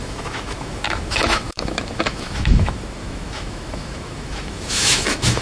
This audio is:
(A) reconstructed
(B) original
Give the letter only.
A